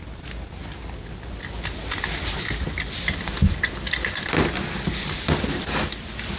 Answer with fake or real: real